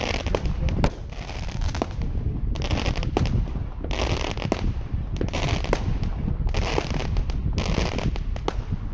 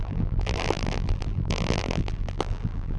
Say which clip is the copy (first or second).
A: second